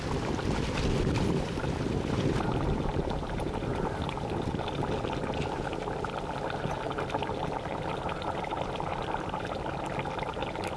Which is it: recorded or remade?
recorded